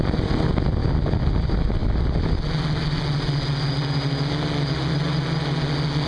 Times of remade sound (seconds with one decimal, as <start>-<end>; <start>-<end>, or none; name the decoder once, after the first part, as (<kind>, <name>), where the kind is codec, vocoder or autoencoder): none